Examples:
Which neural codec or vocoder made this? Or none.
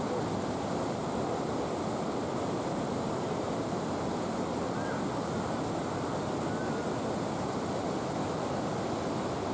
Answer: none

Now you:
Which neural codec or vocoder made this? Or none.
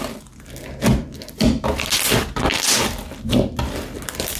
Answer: none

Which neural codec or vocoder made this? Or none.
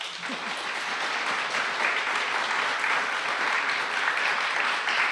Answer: none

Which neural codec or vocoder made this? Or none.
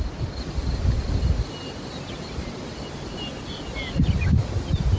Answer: none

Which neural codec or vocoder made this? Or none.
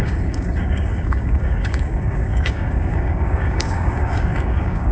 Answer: codec, DAC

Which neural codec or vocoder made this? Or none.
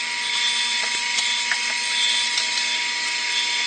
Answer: none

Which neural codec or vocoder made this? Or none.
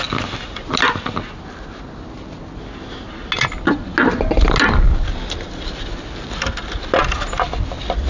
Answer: none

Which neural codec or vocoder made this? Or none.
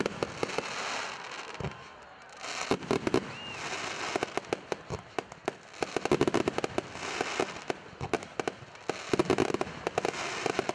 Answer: none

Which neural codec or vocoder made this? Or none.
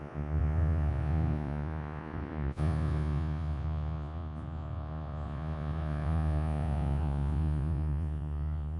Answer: vocoder, Vocos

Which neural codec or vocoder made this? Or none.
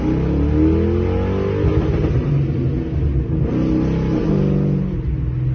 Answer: none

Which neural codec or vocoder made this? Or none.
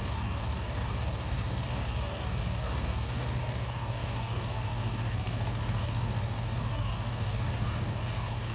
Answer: codec, DAC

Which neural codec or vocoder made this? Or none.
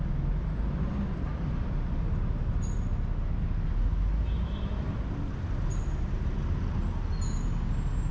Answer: none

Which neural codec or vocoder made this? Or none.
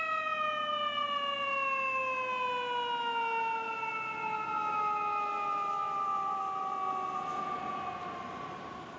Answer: none